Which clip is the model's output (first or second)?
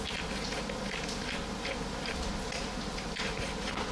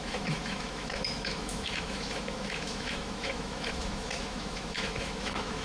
second